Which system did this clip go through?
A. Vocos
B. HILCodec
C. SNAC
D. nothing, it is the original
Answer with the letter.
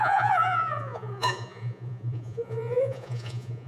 A